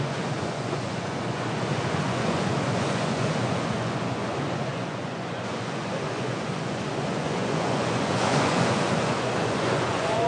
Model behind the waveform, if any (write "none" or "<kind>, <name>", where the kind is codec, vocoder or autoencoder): vocoder, Vocos